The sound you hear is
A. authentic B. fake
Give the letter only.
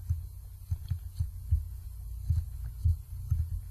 A